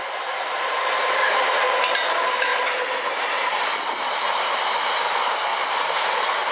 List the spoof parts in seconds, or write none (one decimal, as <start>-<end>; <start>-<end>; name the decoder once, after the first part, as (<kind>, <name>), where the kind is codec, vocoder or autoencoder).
0.0-1.6 (vocoder, BigVGAN v2); 5.5-6.1